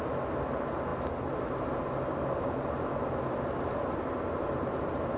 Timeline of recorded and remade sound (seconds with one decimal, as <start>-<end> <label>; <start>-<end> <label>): 0.0-5.2 recorded